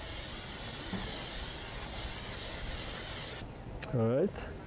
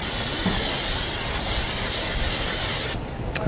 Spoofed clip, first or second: second